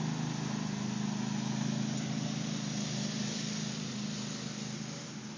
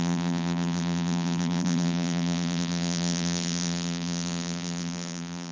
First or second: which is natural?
first